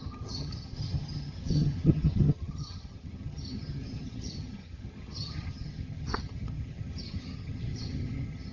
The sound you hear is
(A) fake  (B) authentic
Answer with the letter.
A